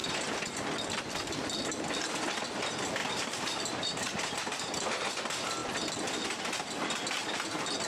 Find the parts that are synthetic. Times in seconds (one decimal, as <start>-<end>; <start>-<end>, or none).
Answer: 0.0-0.6; 3.0-5.1